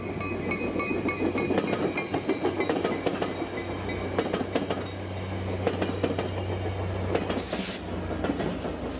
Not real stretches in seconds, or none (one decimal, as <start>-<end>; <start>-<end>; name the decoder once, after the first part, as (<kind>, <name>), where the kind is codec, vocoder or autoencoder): none